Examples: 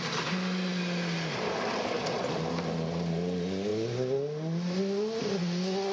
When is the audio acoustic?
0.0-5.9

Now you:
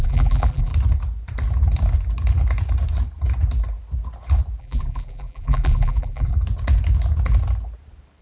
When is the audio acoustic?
0.7-4.6; 6.3-8.2